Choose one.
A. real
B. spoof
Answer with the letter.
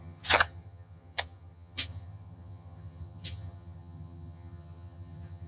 B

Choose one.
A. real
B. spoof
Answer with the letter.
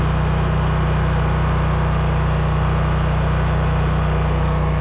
A